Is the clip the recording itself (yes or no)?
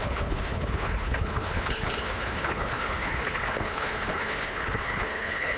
no